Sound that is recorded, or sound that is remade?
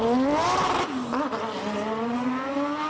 recorded